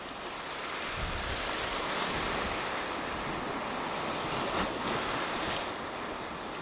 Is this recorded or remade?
recorded